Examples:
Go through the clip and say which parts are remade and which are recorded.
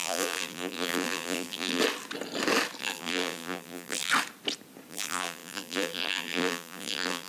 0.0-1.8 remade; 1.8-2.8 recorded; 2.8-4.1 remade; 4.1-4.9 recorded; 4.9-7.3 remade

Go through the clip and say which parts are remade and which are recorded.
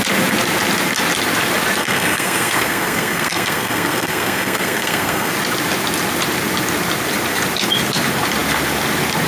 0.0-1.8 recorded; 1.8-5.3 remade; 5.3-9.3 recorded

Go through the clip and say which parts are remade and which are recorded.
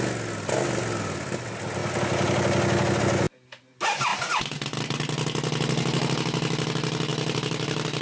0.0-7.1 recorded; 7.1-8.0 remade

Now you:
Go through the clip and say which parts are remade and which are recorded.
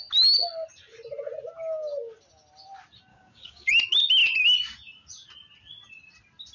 0.0-3.1 recorded; 3.1-3.7 remade; 3.7-6.5 recorded